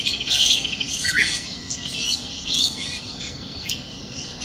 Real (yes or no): no